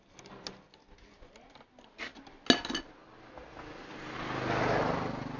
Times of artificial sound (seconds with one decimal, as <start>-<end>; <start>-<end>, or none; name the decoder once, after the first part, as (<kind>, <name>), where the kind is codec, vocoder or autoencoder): none